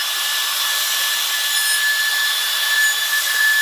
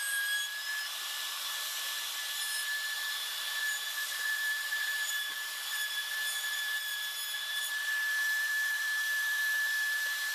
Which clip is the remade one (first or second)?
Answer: second